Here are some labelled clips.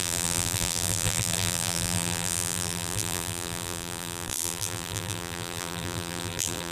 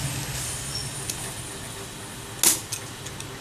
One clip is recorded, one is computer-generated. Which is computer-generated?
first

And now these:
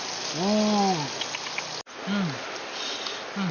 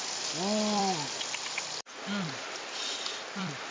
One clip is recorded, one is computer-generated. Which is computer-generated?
second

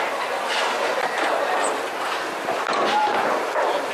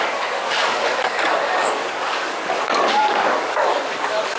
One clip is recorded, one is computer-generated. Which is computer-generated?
second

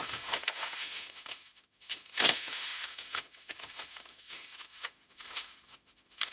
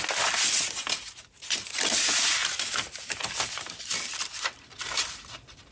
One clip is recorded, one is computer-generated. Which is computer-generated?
first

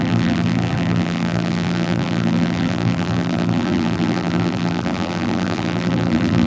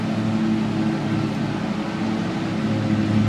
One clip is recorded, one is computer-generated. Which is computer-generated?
first